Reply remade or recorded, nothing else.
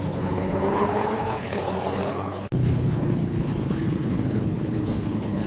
remade